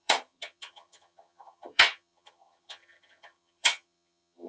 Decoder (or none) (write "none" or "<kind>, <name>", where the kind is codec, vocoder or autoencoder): vocoder, HiFi-GAN